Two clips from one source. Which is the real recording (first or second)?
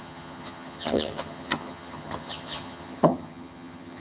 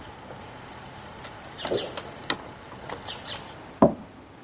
second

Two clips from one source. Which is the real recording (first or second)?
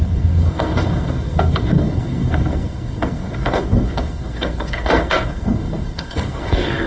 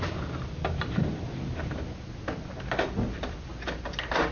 second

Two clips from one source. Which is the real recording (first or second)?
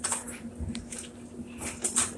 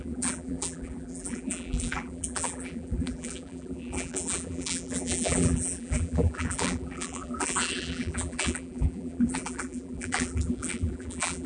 first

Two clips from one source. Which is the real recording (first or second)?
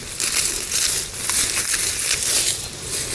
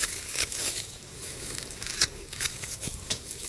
first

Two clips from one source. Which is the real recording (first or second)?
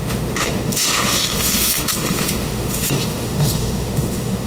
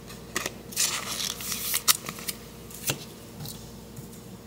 second